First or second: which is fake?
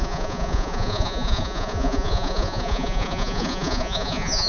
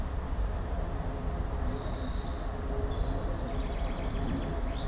first